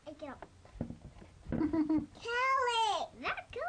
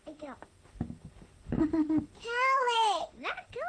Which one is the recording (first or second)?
first